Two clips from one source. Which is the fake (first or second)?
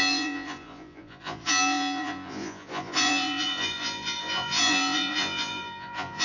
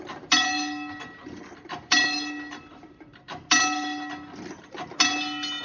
first